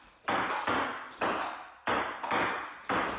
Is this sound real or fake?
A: real